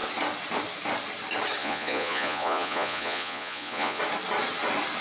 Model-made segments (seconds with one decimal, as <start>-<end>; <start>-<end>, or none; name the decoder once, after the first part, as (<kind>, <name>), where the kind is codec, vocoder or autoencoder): 1.6-4.0 (vocoder, Vocos)